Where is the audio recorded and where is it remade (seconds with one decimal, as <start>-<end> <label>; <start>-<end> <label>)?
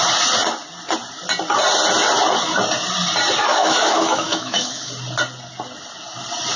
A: 0.0-3.5 recorded; 3.5-4.9 remade; 4.9-6.6 recorded